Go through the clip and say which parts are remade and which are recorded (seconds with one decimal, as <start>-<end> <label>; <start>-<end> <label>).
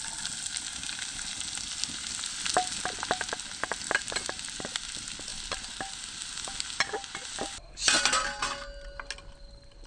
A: 0.0-9.9 recorded